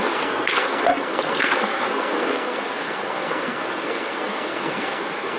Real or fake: fake